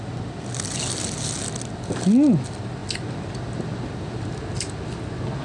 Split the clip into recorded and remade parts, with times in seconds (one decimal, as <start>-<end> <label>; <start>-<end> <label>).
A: 0.0-5.4 recorded